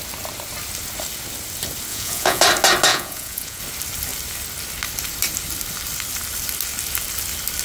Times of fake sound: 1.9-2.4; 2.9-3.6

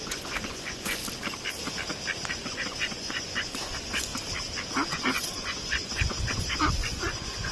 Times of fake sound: 0.0-1.0; 2.3-4.1; 4.9-7.5

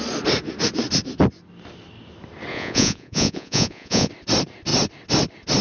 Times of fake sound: 2.5-4.1

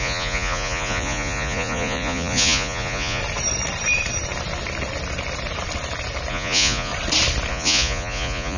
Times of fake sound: 0.0-3.2; 6.3-6.9; 7.5-8.6